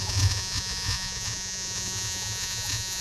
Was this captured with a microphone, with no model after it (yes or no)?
no